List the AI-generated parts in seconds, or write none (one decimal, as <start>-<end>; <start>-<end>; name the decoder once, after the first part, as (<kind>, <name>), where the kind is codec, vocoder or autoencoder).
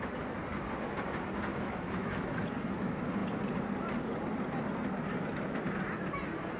1.5-2.3 (autoencoder, DAC-VAE)